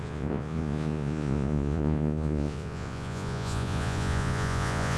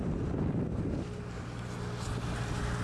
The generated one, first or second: first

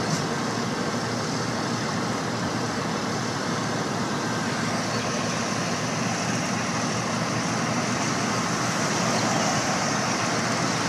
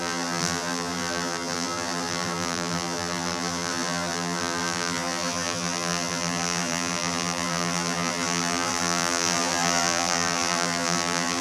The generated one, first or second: second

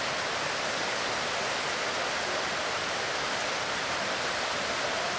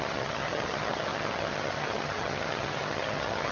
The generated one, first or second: second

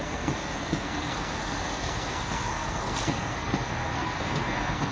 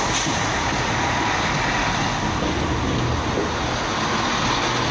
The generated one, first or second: first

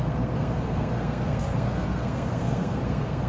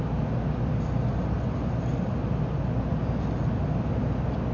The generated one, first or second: first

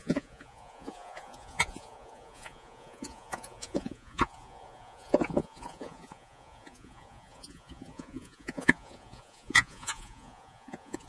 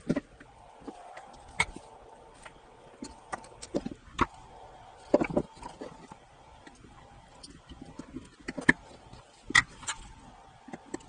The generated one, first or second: first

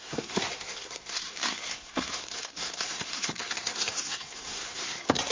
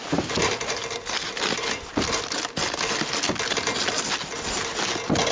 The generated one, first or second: first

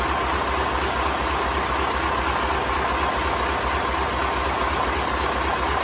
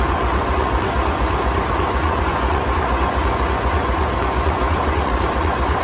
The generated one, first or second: second